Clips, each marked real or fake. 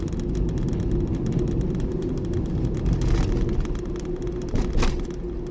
real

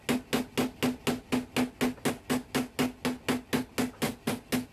real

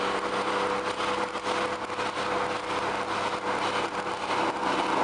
real